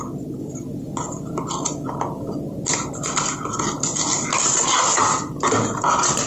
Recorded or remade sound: recorded